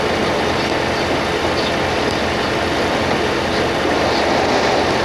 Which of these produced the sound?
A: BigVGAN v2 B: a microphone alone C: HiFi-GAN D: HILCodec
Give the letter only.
B